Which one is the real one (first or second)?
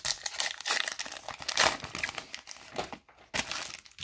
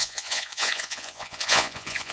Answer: first